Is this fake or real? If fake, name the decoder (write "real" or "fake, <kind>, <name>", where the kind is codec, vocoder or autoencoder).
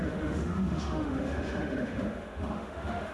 fake, autoencoder, DAC-VAE